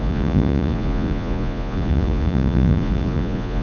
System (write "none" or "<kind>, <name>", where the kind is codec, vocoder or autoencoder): vocoder, Vocos